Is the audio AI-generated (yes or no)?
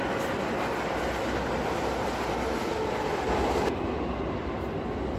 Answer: no